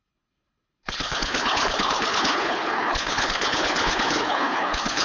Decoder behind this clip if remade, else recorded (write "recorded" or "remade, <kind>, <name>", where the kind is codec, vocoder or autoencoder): remade, codec, HILCodec